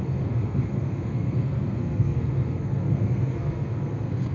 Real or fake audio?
fake